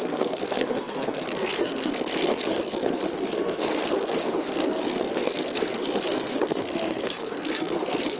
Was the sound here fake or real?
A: fake